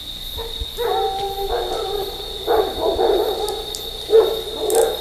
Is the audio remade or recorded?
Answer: recorded